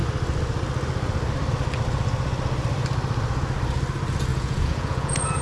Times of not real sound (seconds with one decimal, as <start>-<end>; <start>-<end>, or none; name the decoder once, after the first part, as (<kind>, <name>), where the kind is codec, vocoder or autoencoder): 4.3-5.4 (vocoder, Vocos)